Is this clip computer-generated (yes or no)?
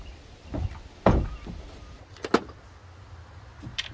no